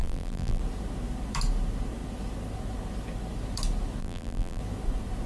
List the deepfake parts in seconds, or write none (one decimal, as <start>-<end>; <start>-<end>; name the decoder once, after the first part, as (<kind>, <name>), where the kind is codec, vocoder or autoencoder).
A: 0.0-0.6 (vocoder, BigVGAN v2); 4.0-4.6